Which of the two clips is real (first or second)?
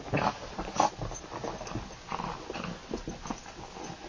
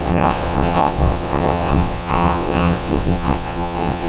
first